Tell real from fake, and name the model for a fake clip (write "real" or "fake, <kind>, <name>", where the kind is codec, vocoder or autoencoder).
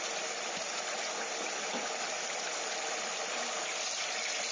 real